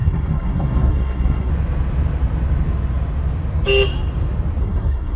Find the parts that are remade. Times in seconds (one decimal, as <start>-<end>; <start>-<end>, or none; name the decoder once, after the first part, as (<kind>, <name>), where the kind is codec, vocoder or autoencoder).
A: 0.0-1.5 (codec, SNAC); 4.6-5.2